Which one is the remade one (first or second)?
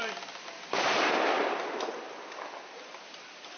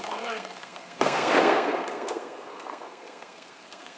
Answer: second